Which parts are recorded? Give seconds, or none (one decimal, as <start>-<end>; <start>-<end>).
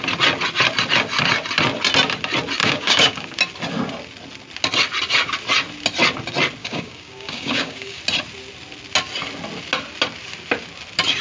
0.0-2.6; 3.4-6.6; 8.0-11.2